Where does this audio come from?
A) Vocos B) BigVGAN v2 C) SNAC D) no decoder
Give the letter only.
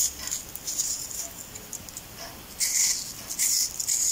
D